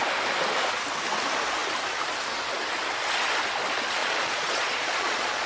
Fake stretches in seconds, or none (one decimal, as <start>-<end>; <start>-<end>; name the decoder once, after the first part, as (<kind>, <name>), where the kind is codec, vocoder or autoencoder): 4.0-5.5 (vocoder, Vocos)